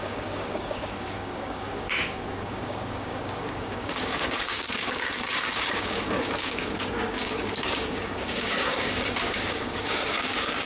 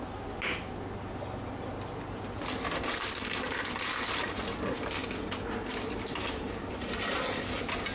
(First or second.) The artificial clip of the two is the first